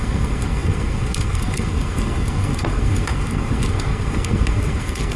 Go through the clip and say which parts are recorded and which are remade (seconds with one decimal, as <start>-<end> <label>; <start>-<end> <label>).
0.0-5.2 remade